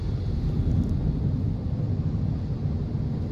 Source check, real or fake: real